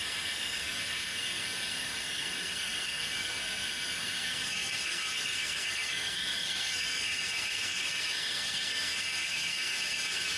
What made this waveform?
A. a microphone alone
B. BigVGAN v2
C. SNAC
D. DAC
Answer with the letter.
C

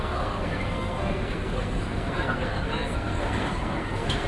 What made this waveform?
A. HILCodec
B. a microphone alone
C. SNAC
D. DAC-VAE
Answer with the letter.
C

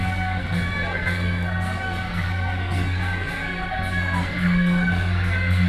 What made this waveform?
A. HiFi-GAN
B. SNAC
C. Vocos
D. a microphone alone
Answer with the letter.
B